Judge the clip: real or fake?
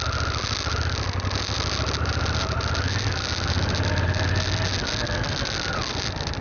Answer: real